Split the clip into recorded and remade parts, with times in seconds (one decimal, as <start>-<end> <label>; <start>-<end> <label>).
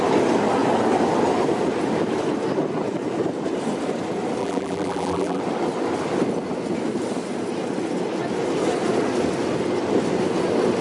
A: 0.0-4.4 recorded; 4.4-5.4 remade; 5.4-10.8 recorded